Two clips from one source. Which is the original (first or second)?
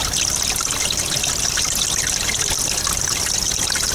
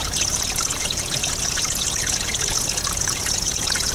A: first